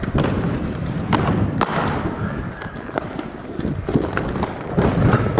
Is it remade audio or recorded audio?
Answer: recorded